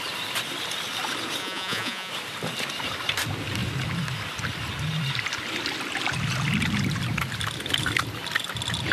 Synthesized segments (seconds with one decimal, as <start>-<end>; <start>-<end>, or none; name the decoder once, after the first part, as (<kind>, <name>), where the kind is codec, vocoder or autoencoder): 1.4-2.1 (vocoder, Vocos)